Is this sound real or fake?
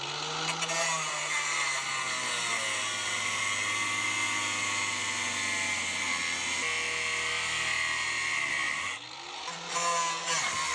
real